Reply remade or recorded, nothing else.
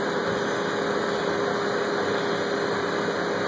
recorded